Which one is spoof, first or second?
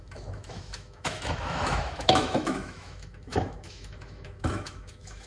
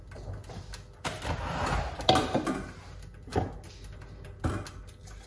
first